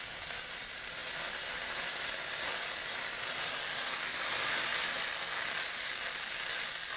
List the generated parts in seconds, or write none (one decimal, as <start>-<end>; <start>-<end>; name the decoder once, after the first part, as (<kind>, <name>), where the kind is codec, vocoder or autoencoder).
none